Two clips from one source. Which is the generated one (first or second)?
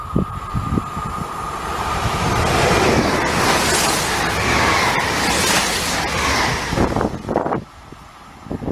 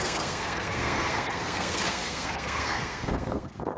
second